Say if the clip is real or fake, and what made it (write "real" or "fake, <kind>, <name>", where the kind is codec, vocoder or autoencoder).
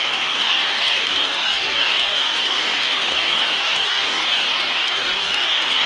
fake, codec, DAC